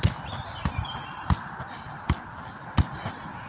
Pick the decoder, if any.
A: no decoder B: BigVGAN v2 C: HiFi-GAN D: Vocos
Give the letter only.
A